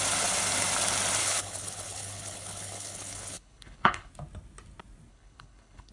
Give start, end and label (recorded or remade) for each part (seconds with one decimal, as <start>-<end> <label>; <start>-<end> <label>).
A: 0.0-1.2 recorded; 1.2-4.1 remade; 4.1-5.1 recorded; 5.1-5.9 remade